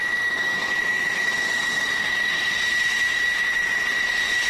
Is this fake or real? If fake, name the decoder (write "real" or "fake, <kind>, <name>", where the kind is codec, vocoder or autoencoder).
real